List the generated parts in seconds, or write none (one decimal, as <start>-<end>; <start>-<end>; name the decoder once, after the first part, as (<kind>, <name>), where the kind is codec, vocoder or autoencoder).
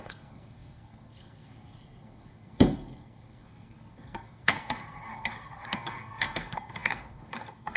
0.0-7.8 (codec, SNAC)